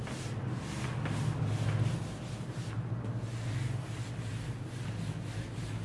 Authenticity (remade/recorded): recorded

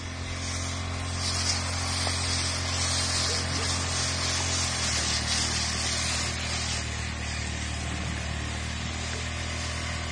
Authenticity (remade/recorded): recorded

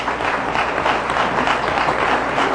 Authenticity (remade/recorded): recorded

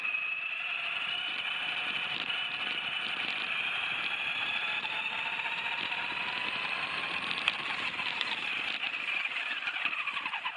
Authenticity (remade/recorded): recorded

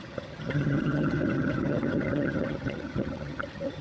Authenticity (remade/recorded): remade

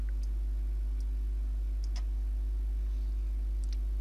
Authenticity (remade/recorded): recorded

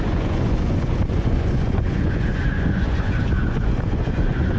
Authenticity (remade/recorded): remade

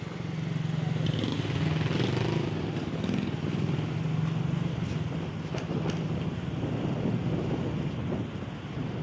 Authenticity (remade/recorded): recorded